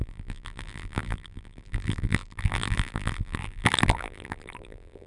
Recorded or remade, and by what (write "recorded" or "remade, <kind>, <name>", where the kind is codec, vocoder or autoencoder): remade, vocoder, BigVGAN v2